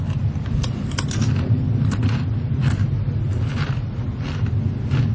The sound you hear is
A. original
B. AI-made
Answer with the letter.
A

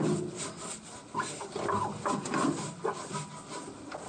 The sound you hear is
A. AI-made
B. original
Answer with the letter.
B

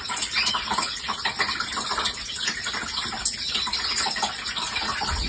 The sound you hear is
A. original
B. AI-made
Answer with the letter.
A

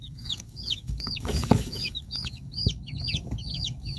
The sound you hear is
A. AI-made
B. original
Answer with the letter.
A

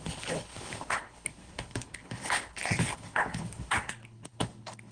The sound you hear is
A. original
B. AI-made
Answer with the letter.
B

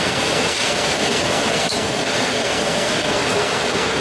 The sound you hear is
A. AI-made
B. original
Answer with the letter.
A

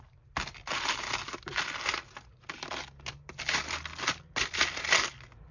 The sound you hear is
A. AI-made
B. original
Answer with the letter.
B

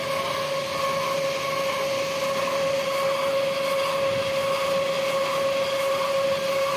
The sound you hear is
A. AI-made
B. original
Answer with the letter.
B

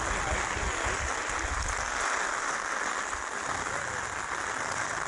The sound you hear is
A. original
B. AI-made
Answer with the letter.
A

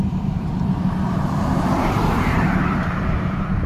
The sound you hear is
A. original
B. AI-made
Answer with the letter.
B